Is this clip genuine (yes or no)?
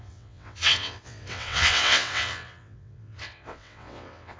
no